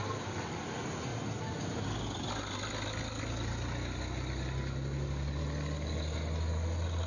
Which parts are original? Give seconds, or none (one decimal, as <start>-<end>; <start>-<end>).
0.0-7.1